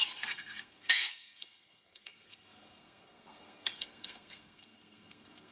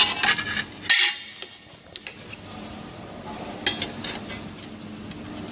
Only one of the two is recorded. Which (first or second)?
second